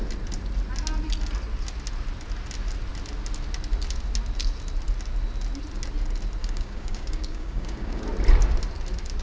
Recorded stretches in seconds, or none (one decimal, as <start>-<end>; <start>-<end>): 0.0-6.4; 8.0-9.2